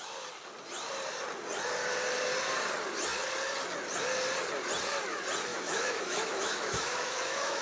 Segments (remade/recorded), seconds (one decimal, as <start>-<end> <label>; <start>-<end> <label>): 0.0-5.5 recorded; 5.5-7.6 remade